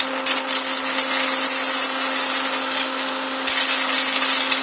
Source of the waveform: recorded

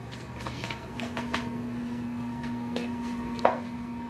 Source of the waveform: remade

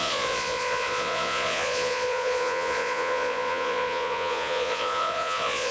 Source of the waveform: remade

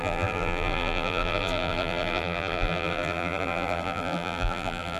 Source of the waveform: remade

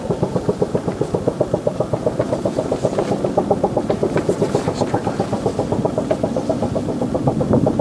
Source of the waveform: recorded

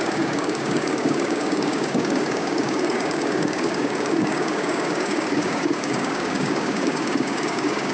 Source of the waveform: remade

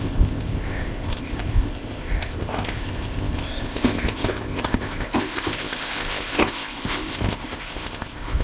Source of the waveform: remade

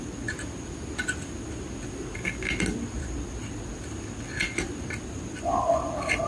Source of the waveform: recorded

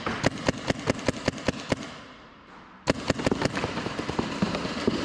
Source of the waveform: recorded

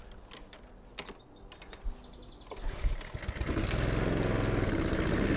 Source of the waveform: recorded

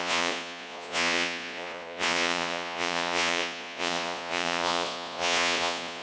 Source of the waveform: remade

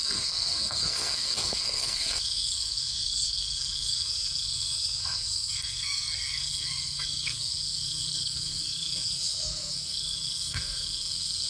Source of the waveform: remade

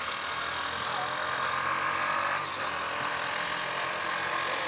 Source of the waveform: recorded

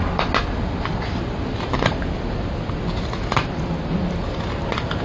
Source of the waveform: recorded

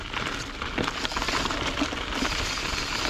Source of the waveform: recorded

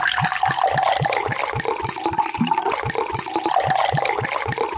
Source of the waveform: recorded